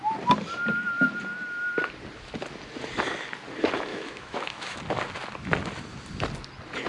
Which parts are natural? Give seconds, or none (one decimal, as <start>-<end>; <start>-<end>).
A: 0.0-3.9; 4.8-6.9

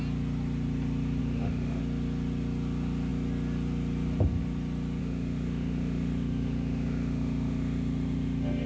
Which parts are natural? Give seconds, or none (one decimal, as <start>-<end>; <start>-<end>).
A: 0.0-1.2; 1.8-5.0